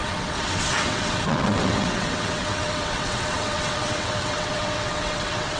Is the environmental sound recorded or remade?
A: remade